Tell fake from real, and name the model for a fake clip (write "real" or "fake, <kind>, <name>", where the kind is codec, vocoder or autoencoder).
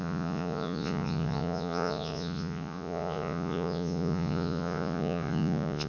fake, vocoder, Vocos